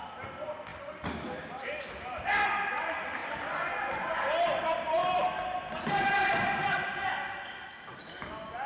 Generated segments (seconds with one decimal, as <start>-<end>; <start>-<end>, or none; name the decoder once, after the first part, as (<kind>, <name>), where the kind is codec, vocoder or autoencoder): none